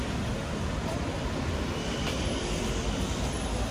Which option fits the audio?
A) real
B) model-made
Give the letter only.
A